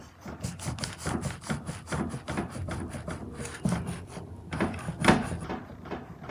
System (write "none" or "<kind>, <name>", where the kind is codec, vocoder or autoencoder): none